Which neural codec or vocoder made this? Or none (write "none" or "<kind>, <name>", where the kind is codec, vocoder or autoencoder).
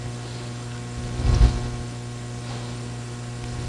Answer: none